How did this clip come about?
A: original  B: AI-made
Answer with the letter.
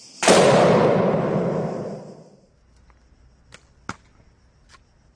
A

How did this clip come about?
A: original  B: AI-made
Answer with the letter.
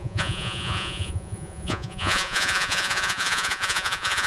B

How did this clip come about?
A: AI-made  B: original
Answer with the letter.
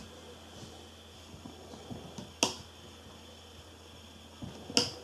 B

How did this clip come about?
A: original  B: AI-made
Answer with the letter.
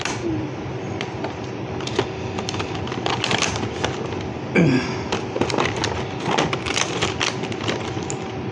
A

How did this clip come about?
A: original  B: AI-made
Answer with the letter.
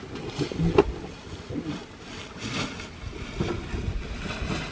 A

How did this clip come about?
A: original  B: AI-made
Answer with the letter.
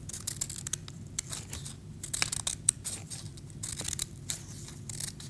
A